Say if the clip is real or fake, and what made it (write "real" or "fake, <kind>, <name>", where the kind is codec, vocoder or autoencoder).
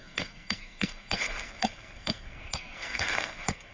fake, codec, SNAC